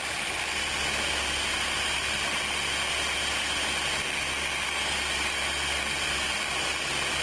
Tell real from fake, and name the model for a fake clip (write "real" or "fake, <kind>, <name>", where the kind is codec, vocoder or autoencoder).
real